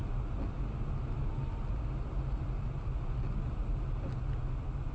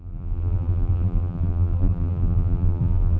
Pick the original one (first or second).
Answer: first